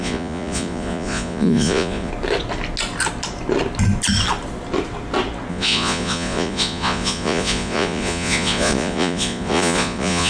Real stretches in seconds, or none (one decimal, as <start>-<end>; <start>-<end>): 2.1-5.5